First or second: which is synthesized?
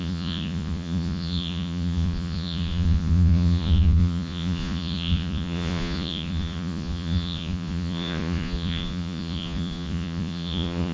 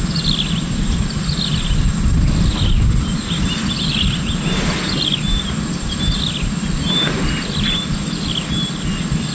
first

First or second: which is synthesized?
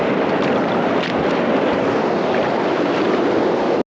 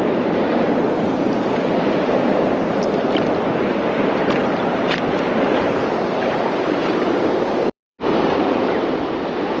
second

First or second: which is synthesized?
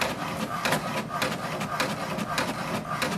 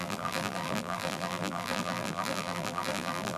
second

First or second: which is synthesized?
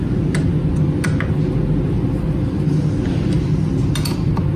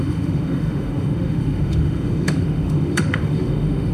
second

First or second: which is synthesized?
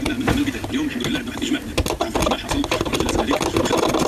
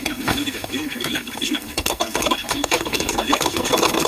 second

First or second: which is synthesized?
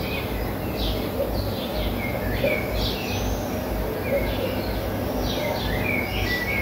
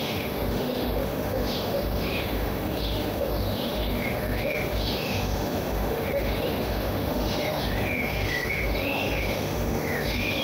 second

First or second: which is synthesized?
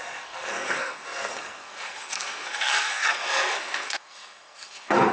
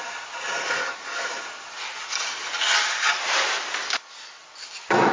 first